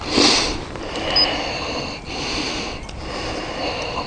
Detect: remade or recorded recorded